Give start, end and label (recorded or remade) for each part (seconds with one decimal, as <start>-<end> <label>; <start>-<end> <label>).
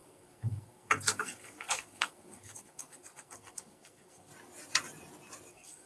0.0-4.3 remade; 4.3-5.5 recorded; 5.5-5.9 remade